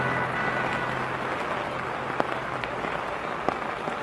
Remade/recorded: recorded